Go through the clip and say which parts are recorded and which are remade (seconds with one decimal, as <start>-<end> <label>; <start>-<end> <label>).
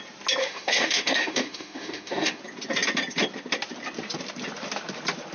0.0-0.4 recorded; 0.4-2.4 remade; 2.4-5.3 recorded